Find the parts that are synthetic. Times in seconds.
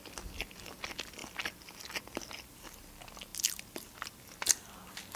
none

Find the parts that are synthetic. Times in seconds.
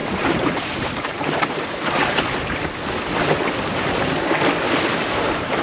0.0-2.0 (vocoder, BigVGAN v2); 5.0-5.6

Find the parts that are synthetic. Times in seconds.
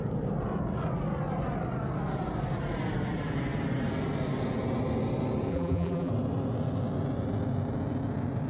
5.5-6.1 (vocoder, BigVGAN v2)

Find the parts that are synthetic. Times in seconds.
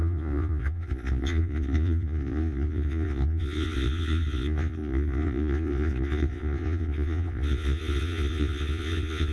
0.0-9.3 (vocoder, Vocos)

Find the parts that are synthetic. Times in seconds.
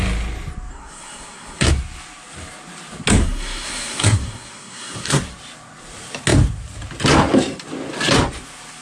0.7-1.7 (codec, SNAC); 3.2-5.2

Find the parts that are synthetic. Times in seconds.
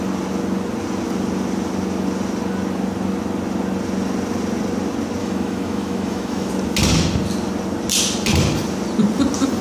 5.2-6.5 (autoencoder, DAC-VAE)